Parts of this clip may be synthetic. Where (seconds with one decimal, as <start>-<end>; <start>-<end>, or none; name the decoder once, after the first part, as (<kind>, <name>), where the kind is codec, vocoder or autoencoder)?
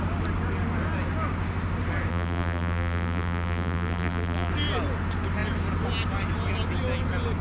2.1-4.5 (vocoder, BigVGAN v2)